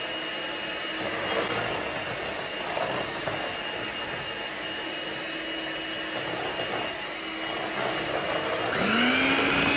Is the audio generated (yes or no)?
no